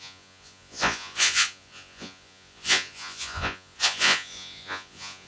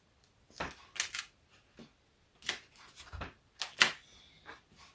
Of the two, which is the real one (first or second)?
second